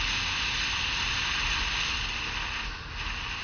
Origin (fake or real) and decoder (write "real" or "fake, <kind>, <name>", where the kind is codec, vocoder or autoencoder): real